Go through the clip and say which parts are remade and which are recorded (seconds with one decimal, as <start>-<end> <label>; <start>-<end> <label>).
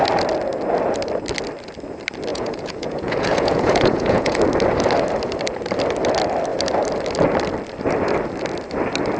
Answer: 0.0-2.3 recorded; 2.3-4.4 remade; 4.4-9.2 recorded